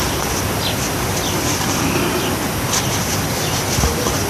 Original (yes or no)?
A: yes